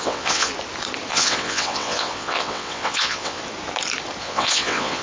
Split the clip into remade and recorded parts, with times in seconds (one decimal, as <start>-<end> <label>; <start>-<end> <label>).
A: 0.0-0.5 remade; 0.5-1.1 recorded; 1.1-3.4 remade; 3.4-4.2 recorded; 4.2-5.0 remade